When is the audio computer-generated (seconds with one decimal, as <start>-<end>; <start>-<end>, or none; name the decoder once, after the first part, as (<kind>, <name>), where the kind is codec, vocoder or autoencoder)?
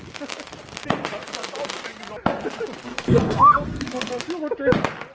2.9-4.2 (codec, SNAC)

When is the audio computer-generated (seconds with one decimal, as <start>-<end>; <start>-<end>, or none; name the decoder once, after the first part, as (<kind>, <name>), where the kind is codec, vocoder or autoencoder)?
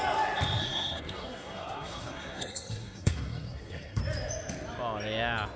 0.6-4.0 (codec, SNAC)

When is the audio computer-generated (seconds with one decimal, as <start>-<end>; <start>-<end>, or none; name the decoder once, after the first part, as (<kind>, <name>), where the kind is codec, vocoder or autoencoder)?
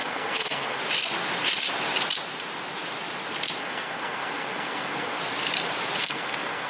0.0-0.8 (codec, SNAC); 3.6-5.2; 6.0-6.7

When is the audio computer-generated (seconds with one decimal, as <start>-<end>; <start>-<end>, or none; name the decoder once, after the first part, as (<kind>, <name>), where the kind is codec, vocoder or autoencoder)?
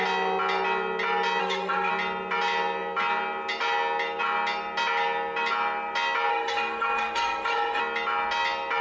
1.4-1.9 (codec, SNAC); 6.3-7.8